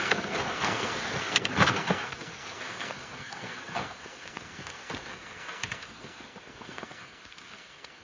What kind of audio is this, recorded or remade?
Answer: remade